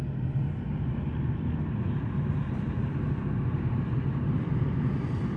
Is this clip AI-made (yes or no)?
no